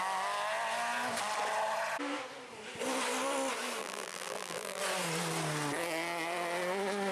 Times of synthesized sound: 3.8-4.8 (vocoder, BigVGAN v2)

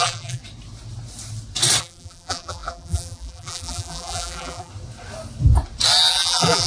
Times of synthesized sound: 0.0-0.4 (vocoder, BigVGAN v2); 1.8-4.7; 6.1-6.7

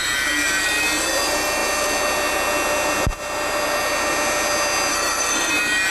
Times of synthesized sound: 4.9-5.5 (codec, SNAC)

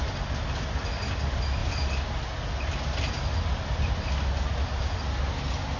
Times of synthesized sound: none

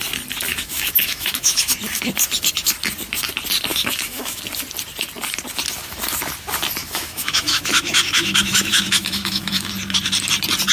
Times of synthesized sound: 0.5-1.7 (autoencoder, DAC-VAE); 3.7-4.4; 6.8-9.7

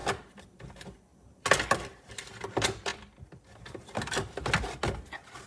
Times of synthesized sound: none